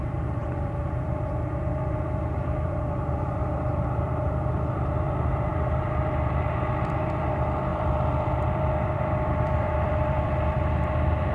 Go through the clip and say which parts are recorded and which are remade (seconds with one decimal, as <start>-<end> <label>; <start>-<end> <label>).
0.0-11.3 remade